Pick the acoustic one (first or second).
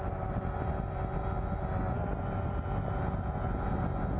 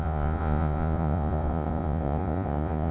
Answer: first